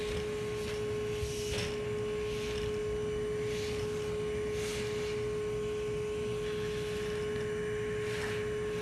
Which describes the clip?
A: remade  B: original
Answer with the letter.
B